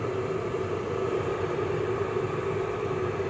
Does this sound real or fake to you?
real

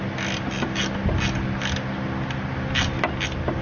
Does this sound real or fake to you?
real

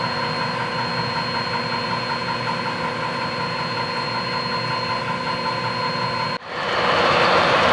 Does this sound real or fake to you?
real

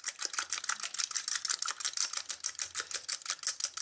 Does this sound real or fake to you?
real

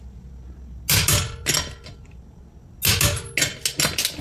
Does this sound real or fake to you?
real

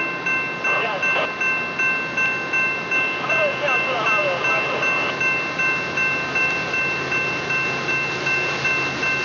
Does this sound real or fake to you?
real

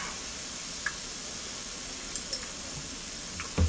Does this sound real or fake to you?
real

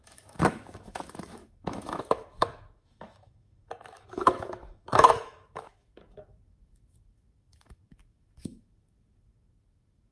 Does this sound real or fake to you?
fake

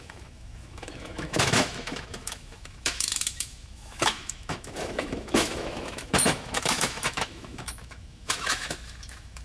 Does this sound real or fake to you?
fake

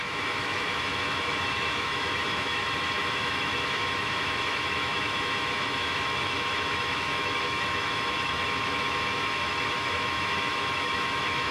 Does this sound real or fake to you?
fake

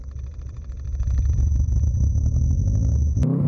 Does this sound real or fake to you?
real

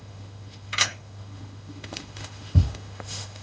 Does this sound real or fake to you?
fake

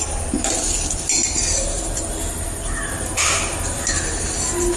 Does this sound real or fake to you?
real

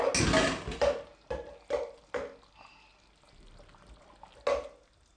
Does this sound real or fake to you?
real